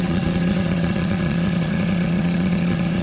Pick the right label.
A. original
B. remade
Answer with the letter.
B